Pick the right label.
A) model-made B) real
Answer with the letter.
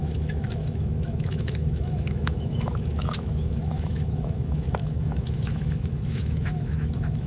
A